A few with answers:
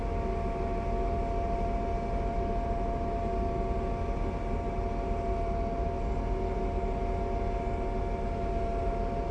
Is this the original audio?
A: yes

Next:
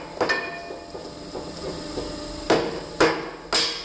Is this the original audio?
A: yes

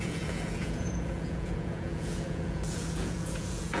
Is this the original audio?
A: no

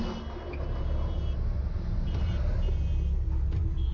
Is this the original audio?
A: yes